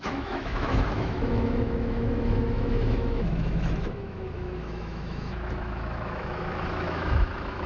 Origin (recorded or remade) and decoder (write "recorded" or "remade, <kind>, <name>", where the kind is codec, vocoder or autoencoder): remade, autoencoder, DAC-VAE